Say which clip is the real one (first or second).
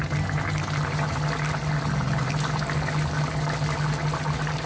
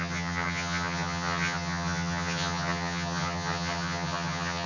first